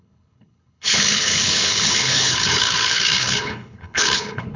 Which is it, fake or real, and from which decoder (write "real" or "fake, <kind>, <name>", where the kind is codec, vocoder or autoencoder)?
fake, codec, HILCodec